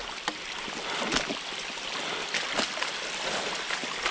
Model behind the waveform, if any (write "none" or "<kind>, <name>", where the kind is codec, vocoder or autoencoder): none